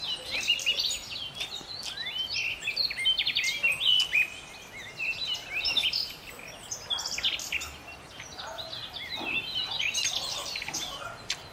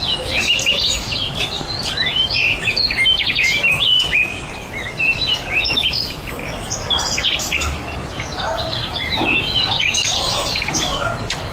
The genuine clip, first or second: first